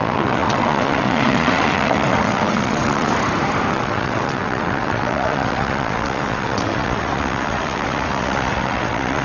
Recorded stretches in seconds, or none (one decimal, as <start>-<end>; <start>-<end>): 3.1-3.7